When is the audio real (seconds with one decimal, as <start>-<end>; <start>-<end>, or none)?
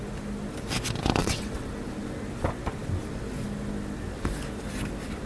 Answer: 0.0-1.2; 1.7-5.3